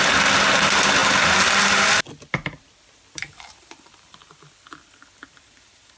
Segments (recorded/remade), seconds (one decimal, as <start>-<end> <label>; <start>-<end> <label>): 0.0-6.0 recorded